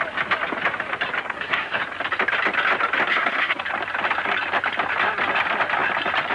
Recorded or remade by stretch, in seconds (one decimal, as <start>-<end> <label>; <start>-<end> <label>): 0.0-1.2 recorded; 1.2-1.8 remade; 1.8-3.1 recorded; 3.1-3.6 remade; 3.6-6.3 recorded